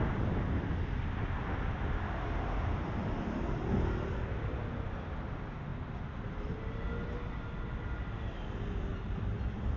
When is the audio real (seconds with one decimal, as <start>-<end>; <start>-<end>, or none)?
0.0-9.8